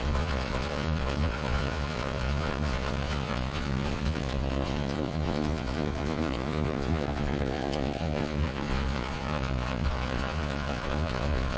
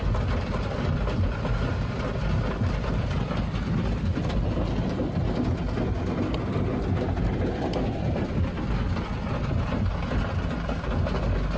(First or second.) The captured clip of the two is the second